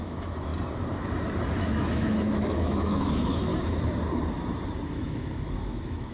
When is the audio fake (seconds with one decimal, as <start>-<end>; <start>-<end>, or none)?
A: 0.0-0.5; 1.6-3.5; 4.9-6.1